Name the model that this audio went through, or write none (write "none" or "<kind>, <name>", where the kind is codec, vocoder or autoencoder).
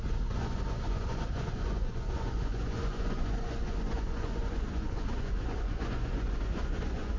vocoder, Vocos